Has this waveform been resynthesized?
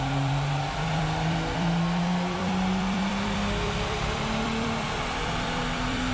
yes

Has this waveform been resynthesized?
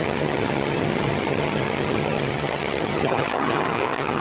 yes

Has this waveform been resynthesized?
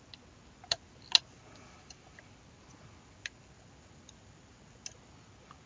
no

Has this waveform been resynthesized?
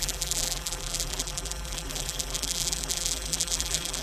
yes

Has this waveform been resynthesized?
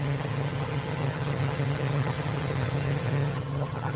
yes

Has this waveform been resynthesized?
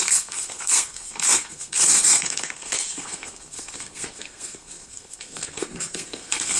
yes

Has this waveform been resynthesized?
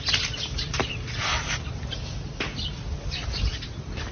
no